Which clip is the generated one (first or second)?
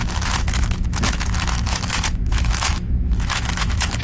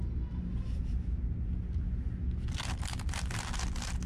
first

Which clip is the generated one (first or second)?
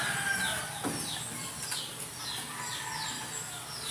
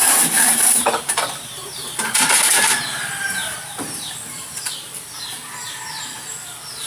second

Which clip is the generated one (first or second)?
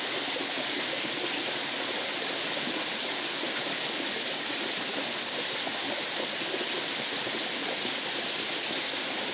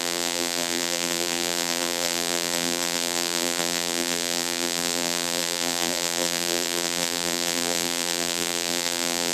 second